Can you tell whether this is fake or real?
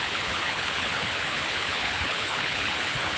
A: fake